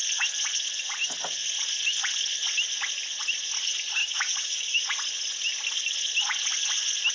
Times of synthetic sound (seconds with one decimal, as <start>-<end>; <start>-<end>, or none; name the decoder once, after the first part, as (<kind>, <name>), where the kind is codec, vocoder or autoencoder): 4.0-4.8 (codec, DAC)